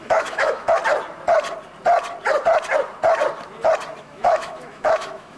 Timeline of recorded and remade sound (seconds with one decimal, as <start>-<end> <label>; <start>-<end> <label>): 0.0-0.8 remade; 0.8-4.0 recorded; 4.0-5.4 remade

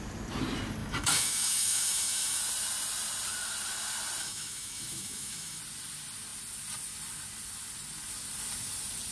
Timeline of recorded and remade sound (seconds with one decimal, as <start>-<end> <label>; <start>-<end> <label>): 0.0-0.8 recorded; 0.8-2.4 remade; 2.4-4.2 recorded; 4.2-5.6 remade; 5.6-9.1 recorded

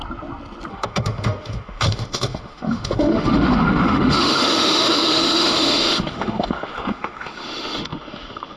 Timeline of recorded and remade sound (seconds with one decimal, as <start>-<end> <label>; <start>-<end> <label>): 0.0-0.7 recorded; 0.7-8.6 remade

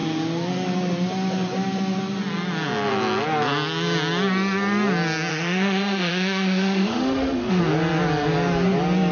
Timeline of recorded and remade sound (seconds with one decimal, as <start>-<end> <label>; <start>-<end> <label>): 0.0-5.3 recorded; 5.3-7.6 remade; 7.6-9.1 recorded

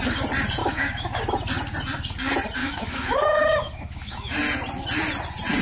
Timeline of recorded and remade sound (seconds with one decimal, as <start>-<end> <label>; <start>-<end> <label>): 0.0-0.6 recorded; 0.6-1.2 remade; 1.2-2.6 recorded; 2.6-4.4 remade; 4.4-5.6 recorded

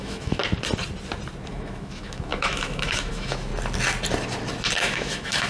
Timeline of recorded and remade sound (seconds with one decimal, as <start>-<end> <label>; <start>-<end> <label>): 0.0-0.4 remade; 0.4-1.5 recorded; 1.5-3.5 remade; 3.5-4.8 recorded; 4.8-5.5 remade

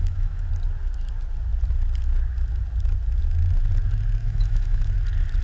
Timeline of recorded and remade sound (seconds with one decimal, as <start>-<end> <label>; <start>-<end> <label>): 0.0-0.5 remade; 0.5-4.2 recorded; 4.2-4.9 remade; 4.9-5.4 recorded